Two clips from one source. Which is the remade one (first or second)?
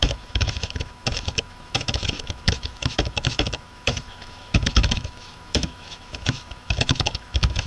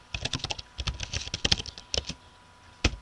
first